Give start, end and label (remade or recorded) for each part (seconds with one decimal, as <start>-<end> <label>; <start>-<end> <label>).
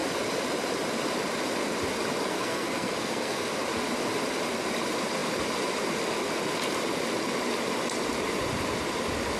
0.0-2.3 recorded; 2.3-3.5 remade; 3.5-9.4 recorded